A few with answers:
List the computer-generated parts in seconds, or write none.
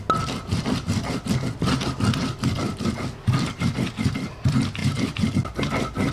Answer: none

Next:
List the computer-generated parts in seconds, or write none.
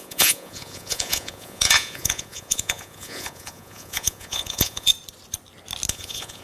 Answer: 0.0-4.9 (vocoder, Vocos); 5.9-6.4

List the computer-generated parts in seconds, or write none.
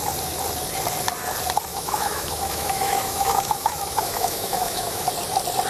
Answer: 1.7-5.1 (autoencoder, DAC-VAE)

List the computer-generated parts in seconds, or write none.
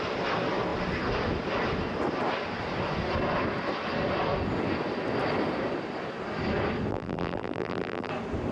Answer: 6.9-8.1 (vocoder, BigVGAN v2)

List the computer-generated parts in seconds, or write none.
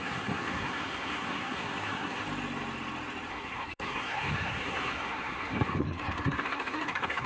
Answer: 0.0-2.2 (codec, SNAC); 3.3-7.3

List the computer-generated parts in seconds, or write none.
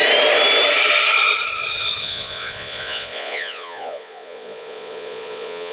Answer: 2.0-5.7 (vocoder, Vocos)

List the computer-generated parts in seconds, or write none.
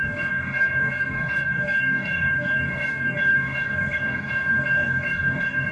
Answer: 0.0-5.7 (codec, DAC)